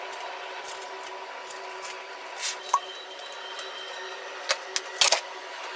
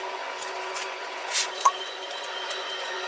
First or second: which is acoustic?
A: first